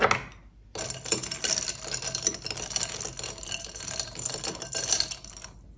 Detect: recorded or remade recorded